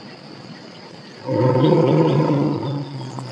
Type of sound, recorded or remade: remade